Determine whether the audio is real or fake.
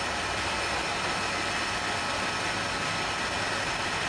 real